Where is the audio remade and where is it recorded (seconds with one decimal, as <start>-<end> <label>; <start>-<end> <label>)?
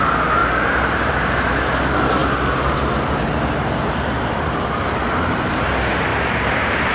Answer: 0.0-0.4 recorded; 0.4-1.1 remade; 1.1-6.1 recorded; 6.1-6.9 remade